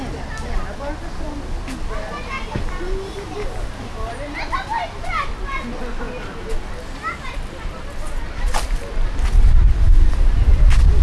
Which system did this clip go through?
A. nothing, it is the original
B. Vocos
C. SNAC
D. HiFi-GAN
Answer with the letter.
A